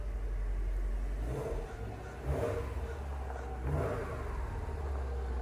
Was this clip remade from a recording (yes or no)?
no